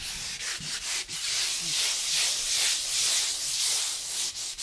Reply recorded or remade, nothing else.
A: recorded